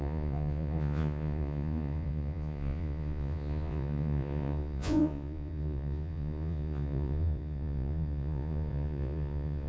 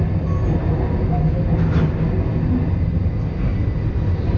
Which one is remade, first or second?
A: first